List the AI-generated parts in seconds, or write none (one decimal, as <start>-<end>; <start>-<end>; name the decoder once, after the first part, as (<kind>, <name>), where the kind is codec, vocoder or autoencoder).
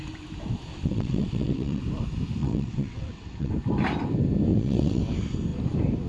0.7-1.8 (vocoder, WaveNeXt); 2.4-3.5; 4.5-5.0